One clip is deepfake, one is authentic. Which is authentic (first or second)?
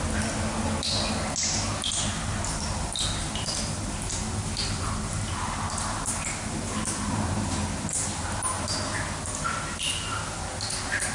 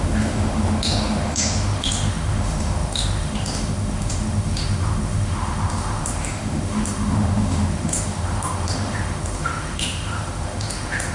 first